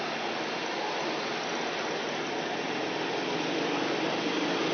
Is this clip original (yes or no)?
yes